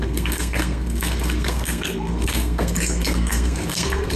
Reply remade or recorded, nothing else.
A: remade